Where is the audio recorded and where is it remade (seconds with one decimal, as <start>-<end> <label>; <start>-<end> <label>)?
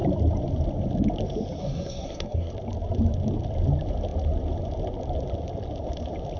0.0-1.6 recorded; 1.6-2.5 remade; 2.5-6.4 recorded